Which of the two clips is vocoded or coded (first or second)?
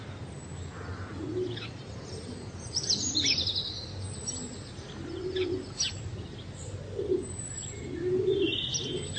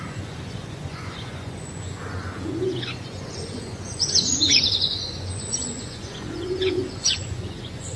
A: second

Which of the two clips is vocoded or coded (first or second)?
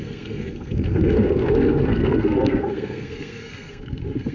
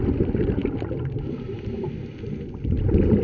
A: first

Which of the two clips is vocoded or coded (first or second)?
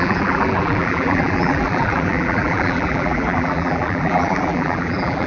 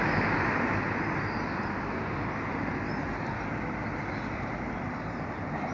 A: first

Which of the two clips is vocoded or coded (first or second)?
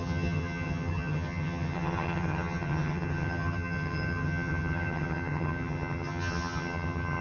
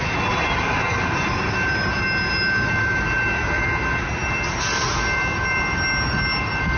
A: first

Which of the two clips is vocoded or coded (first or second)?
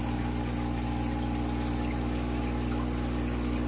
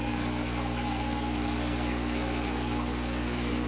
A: second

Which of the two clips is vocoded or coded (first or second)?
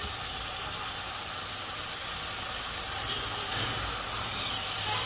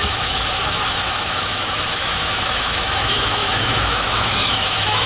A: second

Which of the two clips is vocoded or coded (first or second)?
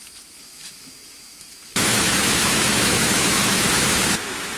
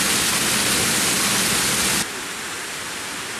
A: first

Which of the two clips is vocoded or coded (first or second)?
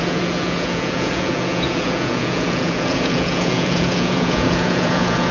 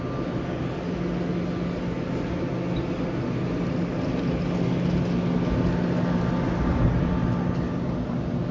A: first